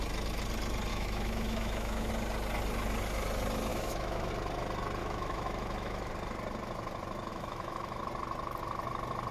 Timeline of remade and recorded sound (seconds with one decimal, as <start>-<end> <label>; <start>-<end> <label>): 0.0-0.9 recorded; 0.9-2.1 remade; 2.1-3.7 recorded; 3.7-4.3 remade; 4.3-5.0 recorded; 5.0-6.1 remade; 6.1-7.3 recorded; 7.3-8.0 remade; 8.0-9.3 recorded